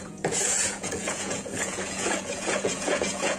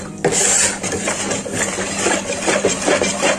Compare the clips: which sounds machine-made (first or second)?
first